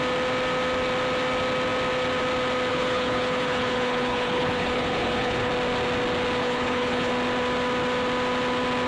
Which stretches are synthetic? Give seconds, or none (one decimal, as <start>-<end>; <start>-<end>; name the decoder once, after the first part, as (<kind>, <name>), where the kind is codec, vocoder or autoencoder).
2.7-5.5 (codec, HILCodec); 6.4-7.1